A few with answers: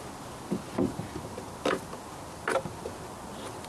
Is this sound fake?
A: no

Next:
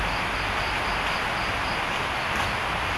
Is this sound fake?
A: no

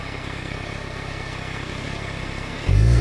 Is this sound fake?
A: yes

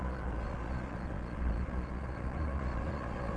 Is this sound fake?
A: yes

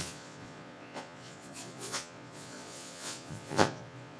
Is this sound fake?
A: yes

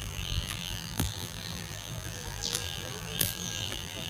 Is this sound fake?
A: yes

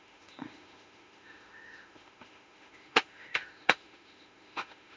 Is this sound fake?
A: yes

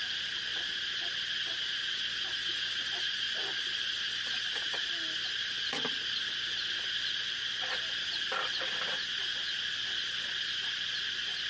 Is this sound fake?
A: no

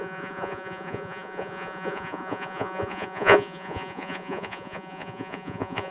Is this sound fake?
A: yes